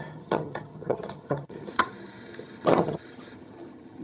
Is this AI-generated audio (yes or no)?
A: yes